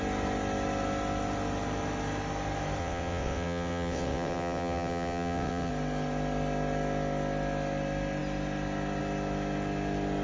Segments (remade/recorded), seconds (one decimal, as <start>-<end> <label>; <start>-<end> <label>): 0.0-2.8 recorded; 2.8-5.7 remade; 5.7-10.2 recorded

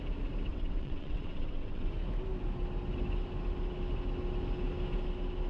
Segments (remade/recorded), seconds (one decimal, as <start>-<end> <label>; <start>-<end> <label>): 0.0-0.5 recorded; 0.5-1.9 remade; 1.9-5.5 recorded

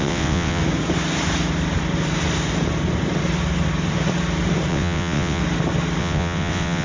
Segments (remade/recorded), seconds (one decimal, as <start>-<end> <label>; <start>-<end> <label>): 0.0-0.6 remade; 0.6-4.7 recorded; 4.7-5.4 remade; 5.4-6.0 recorded; 6.0-6.8 remade

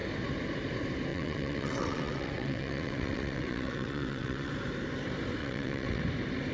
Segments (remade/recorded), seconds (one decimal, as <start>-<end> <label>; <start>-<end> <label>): 0.0-1.1 recorded; 1.1-4.5 remade; 4.5-5.4 recorded; 5.4-6.0 remade; 6.0-6.5 recorded

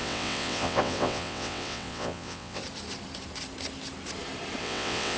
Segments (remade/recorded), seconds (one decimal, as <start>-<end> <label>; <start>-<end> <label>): 0.0-2.6 remade; 2.6-4.6 recorded; 4.6-5.2 remade

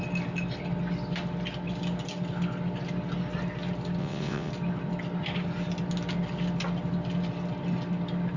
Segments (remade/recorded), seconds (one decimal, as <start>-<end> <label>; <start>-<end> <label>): 0.0-4.0 recorded; 4.0-4.5 remade; 4.5-8.4 recorded